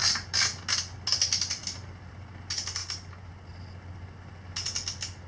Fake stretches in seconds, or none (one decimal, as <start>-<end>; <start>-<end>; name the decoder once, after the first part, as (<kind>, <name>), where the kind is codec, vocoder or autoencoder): none